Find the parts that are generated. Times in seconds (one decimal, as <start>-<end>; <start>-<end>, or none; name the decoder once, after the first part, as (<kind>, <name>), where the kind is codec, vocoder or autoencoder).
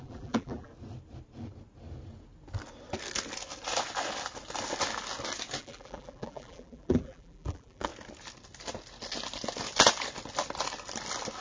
0.0-0.7 (vocoder, BigVGAN v2); 5.6-7.9